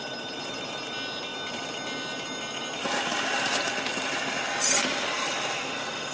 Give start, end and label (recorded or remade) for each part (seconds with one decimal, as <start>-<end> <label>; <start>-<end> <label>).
0.0-6.1 recorded